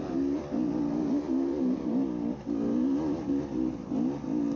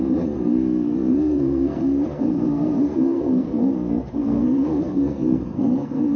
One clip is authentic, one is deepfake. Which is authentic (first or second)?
first